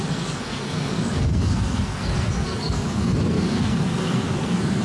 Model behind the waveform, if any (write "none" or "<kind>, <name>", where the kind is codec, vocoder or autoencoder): codec, SNAC